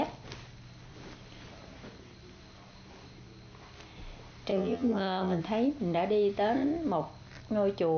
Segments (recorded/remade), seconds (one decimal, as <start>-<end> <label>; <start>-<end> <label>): 0.0-4.5 recorded; 4.5-5.4 remade; 5.4-8.0 recorded